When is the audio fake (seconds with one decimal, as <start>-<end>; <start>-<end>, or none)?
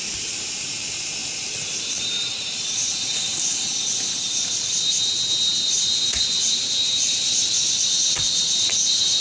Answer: 0.0-3.7; 4.3-9.2